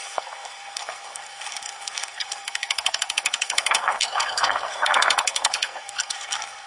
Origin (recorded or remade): remade